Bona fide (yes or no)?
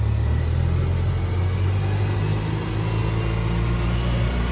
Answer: yes